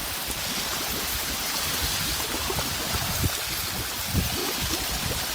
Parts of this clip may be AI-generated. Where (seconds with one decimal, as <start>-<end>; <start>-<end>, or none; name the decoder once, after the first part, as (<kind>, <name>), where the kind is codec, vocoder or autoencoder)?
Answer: 0.0-3.2 (vocoder, BigVGAN v2)